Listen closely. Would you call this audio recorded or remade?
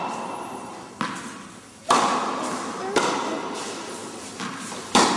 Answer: recorded